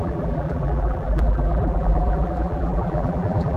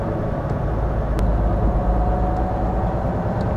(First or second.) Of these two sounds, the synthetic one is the first